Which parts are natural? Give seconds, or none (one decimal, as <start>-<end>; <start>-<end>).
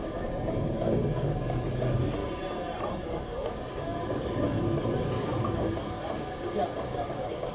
2.2-3.0